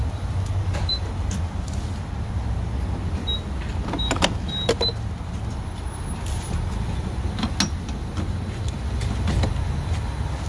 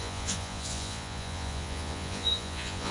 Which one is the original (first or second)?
first